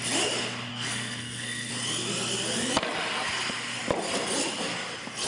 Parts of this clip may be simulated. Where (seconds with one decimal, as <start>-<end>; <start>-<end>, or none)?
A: 0.7-1.7